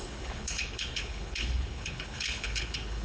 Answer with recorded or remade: remade